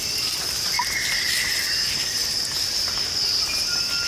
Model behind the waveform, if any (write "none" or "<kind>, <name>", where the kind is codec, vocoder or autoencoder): none